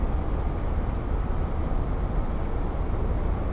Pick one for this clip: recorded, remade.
recorded